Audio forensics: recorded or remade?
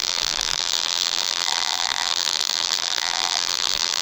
remade